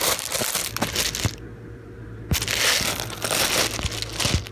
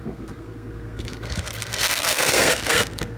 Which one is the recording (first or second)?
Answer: first